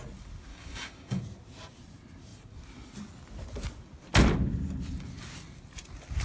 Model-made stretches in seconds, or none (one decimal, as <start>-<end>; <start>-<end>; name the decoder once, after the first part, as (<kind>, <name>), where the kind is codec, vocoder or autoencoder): 0.5-1.2 (codec, DAC)